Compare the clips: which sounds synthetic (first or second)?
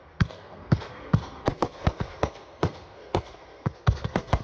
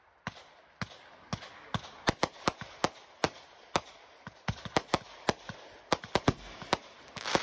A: first